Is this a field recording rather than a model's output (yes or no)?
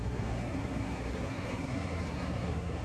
no